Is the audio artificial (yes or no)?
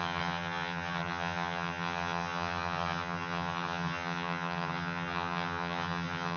yes